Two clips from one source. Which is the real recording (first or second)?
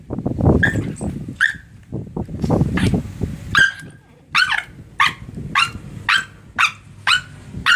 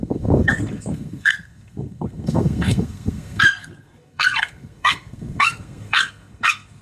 first